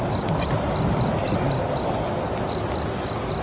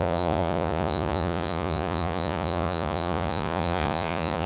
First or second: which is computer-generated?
second